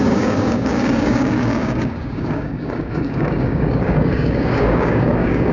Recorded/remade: remade